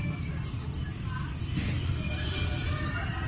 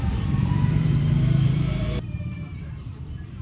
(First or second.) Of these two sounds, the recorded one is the first